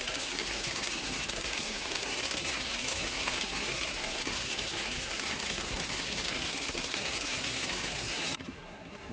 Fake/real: fake